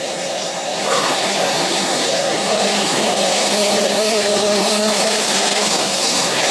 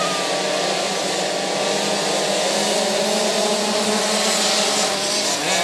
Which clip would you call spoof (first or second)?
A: first